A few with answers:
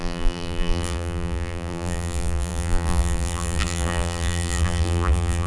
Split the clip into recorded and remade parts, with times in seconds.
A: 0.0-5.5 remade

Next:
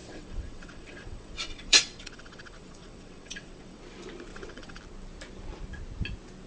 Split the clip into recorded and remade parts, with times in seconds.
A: 0.0-3.8 remade; 3.8-4.3 recorded; 4.3-4.8 remade; 4.8-6.5 recorded

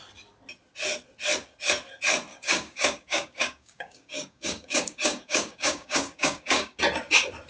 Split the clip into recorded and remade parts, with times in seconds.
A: 0.0-2.3 recorded; 2.3-6.8 remade; 6.8-7.5 recorded

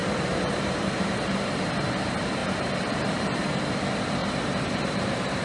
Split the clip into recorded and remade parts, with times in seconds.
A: 0.0-1.6 remade; 1.6-2.4 recorded; 2.4-3.6 remade; 3.6-4.2 recorded; 4.2-5.4 remade

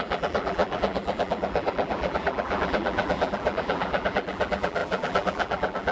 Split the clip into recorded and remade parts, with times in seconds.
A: 0.0-5.9 remade